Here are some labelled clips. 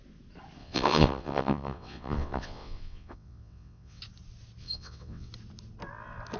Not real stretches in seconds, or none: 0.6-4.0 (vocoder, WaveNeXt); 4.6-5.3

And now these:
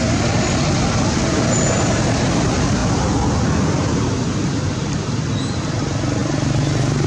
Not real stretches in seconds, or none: none

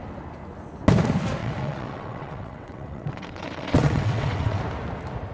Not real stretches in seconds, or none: 1.4-4.6 (vocoder, WaveNeXt)

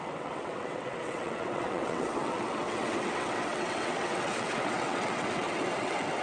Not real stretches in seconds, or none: 0.0-6.2 (vocoder, WaveNeXt)

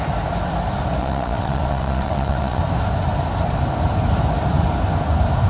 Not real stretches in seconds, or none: 1.0-2.6 (vocoder, WaveNeXt)

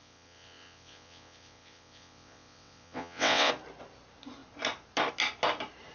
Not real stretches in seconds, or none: 0.0-3.5 (vocoder, WaveNeXt)